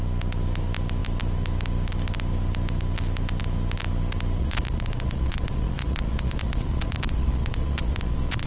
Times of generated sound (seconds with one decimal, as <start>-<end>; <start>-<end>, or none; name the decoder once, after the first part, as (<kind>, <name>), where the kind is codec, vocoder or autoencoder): 4.4-8.5 (vocoder, Vocos)